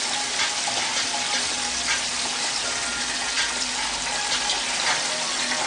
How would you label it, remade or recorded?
recorded